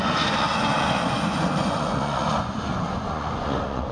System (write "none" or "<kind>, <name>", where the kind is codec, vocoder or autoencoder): vocoder, Vocos